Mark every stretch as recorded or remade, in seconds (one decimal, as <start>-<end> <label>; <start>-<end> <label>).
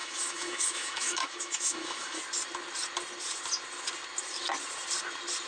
0.0-2.2 remade; 2.2-5.5 recorded